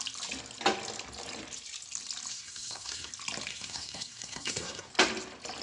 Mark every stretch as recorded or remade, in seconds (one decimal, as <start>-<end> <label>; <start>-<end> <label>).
0.0-2.3 recorded; 2.3-3.1 remade; 3.1-3.5 recorded; 3.5-4.9 remade; 4.9-5.6 recorded